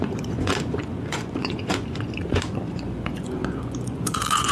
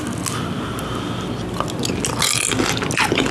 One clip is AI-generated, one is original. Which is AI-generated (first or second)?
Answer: first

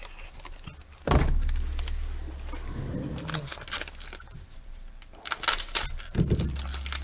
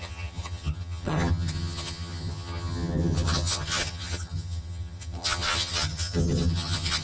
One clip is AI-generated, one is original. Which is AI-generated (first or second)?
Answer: second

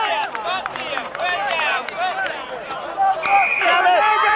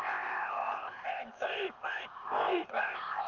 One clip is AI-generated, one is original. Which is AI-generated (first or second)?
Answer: second